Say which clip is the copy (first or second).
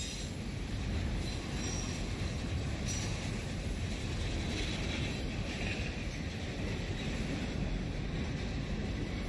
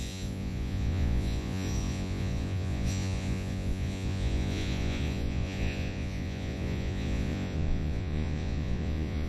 second